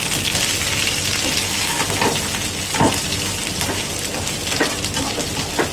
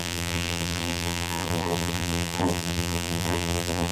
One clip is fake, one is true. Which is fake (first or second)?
second